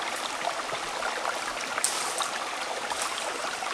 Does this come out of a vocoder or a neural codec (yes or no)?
no